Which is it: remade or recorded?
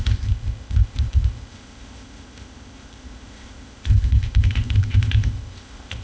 remade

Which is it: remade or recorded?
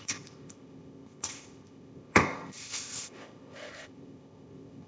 remade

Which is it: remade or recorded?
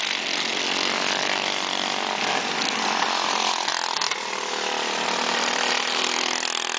recorded